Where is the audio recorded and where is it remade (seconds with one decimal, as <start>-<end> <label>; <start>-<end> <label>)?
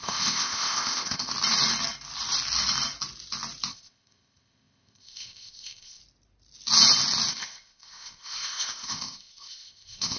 0.0-1.3 remade; 1.3-3.7 recorded; 3.7-6.0 remade; 6.0-7.3 recorded; 7.3-10.2 remade